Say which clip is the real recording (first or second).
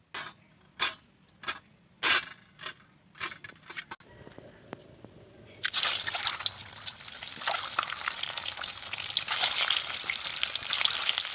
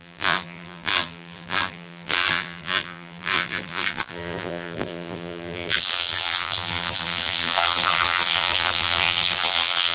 first